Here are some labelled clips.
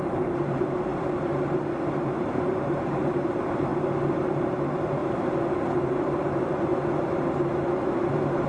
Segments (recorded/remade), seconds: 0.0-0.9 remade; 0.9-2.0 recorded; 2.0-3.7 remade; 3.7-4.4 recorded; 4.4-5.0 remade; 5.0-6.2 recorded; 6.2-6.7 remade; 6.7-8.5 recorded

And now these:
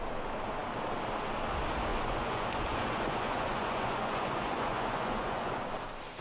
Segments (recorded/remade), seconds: 0.0-1.9 recorded; 1.9-5.6 remade; 5.6-6.2 recorded

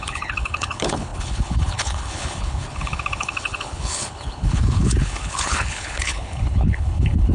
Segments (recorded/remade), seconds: 0.0-7.3 remade